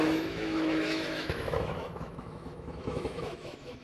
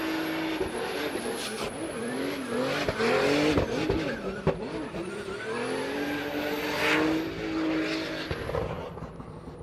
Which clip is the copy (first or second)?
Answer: first